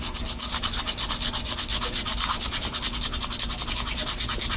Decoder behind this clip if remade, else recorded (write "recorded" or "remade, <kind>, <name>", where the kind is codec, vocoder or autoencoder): recorded